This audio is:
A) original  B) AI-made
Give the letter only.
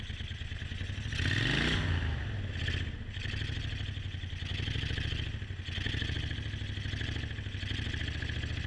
A